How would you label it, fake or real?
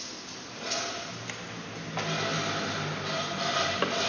real